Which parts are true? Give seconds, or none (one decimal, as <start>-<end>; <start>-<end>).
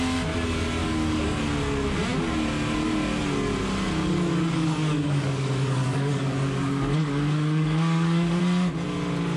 0.0-0.8; 1.4-4.0; 8.4-9.4